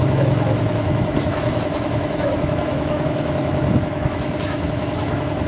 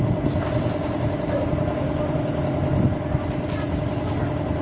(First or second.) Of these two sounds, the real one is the second